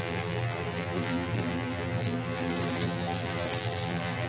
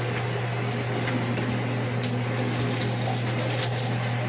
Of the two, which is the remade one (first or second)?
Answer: first